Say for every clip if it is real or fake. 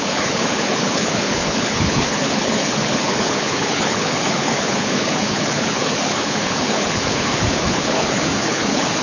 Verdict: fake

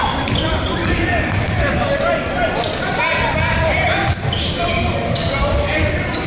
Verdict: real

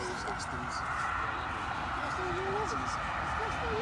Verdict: real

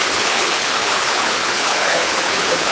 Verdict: fake